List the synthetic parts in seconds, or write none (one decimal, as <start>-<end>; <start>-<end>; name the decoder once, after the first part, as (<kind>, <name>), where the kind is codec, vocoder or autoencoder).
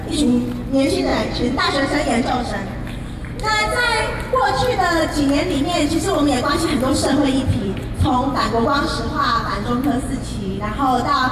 1.1-1.6 (vocoder, BigVGAN v2); 7.0-8.2